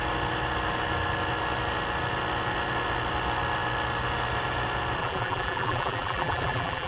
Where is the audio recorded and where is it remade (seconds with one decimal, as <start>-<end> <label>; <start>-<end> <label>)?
0.0-5.0 recorded; 5.0-6.9 remade